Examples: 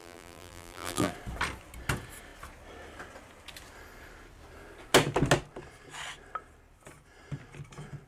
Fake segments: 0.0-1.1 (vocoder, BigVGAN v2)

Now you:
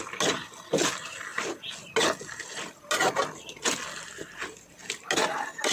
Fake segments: none

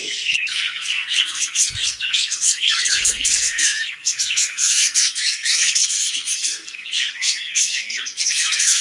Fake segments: 0.0-8.8 (codec, SNAC)

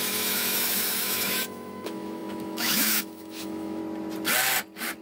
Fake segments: 0.0-3.8 (autoencoder, DAC-VAE)